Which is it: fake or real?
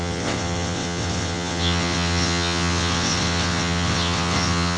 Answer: fake